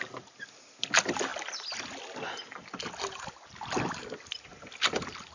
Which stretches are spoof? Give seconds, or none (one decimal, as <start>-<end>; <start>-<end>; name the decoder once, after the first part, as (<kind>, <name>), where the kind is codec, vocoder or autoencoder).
none